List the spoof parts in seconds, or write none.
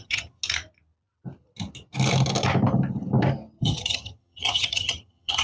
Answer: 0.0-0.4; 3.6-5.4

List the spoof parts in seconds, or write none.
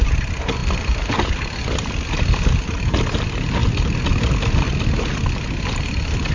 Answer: none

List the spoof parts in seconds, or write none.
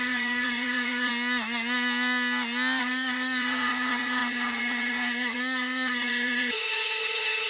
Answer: 0.0-1.1; 2.8-7.5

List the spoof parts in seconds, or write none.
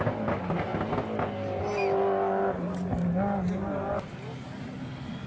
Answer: none